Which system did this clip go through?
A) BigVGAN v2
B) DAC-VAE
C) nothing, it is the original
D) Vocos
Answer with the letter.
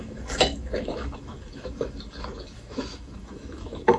B